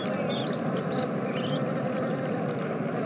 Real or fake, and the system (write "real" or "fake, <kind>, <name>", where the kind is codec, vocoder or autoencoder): real